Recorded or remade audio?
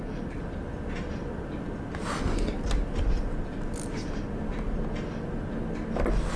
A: recorded